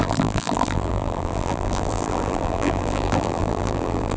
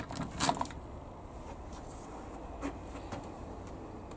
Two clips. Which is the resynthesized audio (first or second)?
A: first